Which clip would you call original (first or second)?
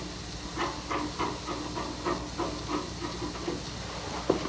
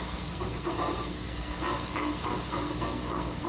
first